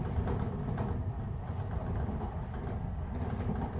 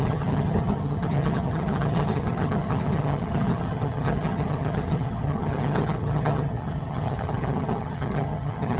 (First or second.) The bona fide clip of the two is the first